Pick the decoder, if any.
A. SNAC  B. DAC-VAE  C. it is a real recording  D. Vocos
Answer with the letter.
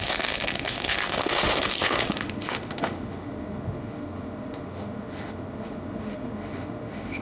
B